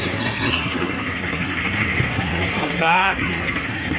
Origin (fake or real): fake